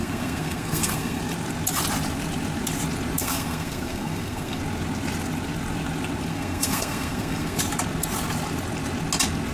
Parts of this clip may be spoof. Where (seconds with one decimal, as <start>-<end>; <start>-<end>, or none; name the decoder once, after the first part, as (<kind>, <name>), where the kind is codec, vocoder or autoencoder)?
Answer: 0.0-1.2 (codec, SNAC); 3.2-4.6; 6.3-7.6